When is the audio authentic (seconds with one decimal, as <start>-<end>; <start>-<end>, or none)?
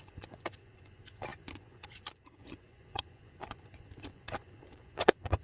none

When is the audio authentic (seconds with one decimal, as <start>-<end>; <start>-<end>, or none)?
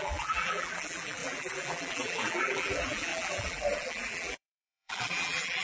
none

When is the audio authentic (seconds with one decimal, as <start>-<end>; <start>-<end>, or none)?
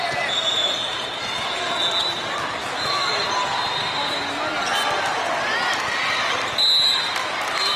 0.0-2.6; 3.2-7.8